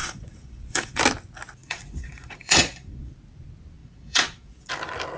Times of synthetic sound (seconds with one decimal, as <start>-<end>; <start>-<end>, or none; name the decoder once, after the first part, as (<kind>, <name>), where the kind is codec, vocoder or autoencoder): 0.0-1.0 (vocoder, Vocos); 1.6-3.1; 3.8-4.7